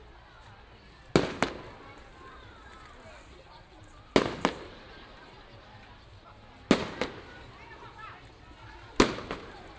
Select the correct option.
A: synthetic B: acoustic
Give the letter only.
B